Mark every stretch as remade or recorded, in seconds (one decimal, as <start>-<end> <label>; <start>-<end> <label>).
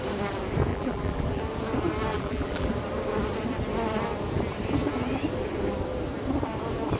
0.0-0.7 recorded; 0.7-1.4 remade; 1.4-2.1 recorded; 2.1-2.7 remade; 2.7-7.0 recorded